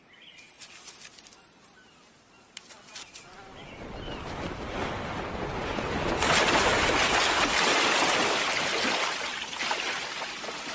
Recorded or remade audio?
recorded